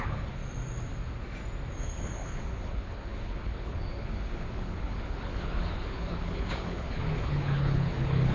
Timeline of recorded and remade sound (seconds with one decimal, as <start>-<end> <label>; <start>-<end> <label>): 0.0-0.4 remade; 0.4-1.8 recorded; 1.8-8.3 remade